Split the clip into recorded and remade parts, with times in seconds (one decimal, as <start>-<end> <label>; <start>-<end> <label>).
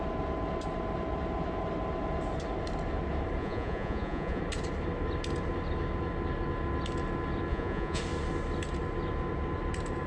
0.0-3.4 recorded; 3.4-4.4 remade; 4.4-7.5 recorded; 7.5-8.0 remade; 8.0-10.1 recorded